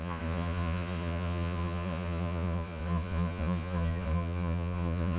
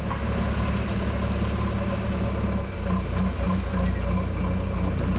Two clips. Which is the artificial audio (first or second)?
first